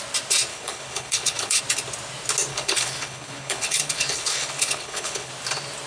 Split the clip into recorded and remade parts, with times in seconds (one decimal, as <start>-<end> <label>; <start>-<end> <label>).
0.0-0.5 recorded; 0.5-1.6 remade; 1.6-2.5 recorded; 2.5-5.3 remade; 5.3-5.9 recorded